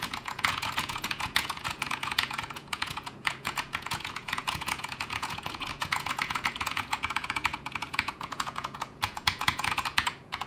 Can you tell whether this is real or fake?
fake